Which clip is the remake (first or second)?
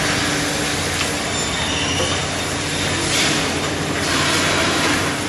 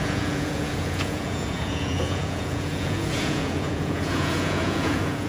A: second